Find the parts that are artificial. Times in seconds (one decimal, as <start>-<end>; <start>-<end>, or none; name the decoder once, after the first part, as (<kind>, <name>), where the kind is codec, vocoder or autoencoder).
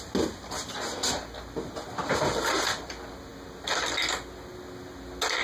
2.1-2.9 (vocoder, BigVGAN v2)